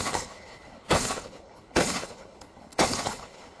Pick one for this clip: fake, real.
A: fake